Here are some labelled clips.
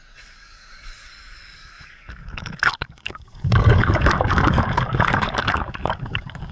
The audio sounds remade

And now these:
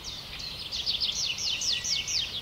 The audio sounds recorded